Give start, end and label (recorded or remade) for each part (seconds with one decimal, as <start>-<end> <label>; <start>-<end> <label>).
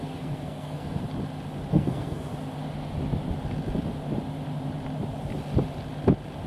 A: 0.0-1.0 remade; 1.0-1.7 recorded; 1.7-2.3 remade; 2.3-6.5 recorded